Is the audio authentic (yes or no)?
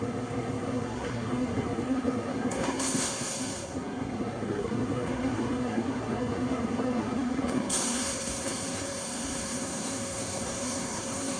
no